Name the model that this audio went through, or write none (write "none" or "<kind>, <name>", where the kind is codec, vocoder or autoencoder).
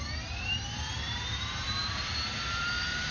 vocoder, BigVGAN v2